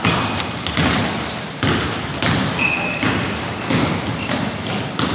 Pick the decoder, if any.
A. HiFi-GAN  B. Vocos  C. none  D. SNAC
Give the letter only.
C